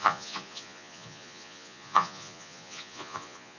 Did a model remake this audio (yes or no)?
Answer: yes